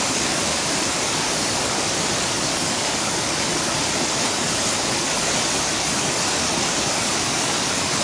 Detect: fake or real fake